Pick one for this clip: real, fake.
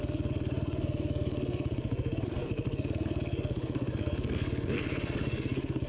fake